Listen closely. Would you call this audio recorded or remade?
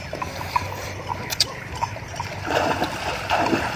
remade